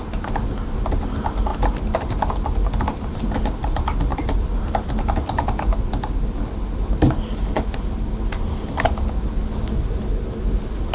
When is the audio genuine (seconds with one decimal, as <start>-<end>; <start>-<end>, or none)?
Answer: 0.0-4.1; 4.9-10.9